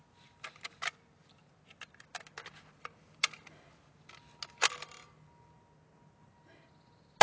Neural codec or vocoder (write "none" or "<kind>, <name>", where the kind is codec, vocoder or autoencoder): none